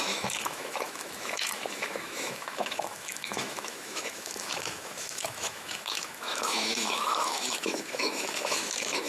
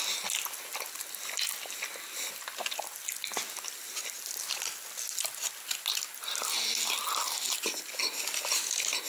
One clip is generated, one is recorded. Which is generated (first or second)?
first